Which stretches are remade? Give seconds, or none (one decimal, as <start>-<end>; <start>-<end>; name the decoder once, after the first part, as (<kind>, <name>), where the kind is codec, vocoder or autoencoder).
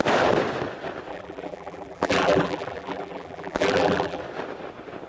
1.1-4.2 (vocoder, BigVGAN v2)